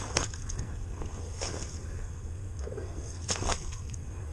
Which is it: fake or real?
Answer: fake